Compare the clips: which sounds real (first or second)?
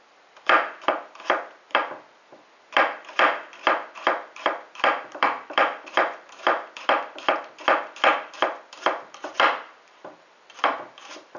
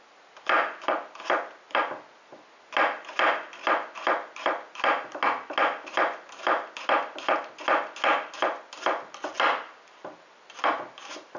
second